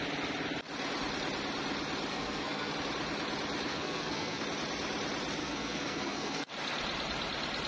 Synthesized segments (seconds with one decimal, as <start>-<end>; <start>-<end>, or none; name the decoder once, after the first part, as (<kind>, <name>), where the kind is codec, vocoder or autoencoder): 2.1-2.7 (codec, SNAC); 3.7-4.4; 5.4-6.5